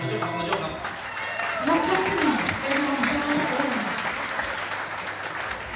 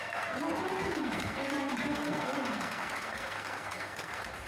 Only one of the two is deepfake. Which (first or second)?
second